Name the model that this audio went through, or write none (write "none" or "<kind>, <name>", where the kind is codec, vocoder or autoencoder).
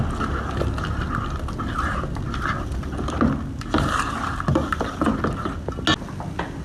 none